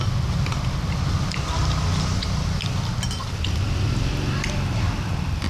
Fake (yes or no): no